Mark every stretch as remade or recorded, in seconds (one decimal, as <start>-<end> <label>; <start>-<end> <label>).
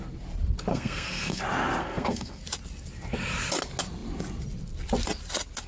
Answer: 0.0-0.7 recorded; 0.7-1.4 remade; 1.4-1.8 recorded; 1.8-2.4 remade; 2.4-5.7 recorded